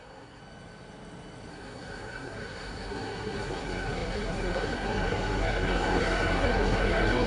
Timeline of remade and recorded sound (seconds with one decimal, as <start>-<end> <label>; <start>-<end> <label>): 0.0-0.4 remade; 0.4-1.5 recorded; 1.5-7.3 remade